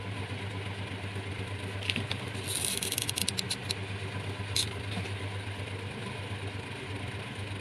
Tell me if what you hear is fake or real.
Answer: real